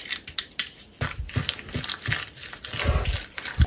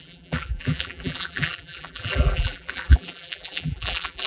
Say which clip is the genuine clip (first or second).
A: first